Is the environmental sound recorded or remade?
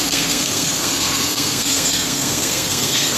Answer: remade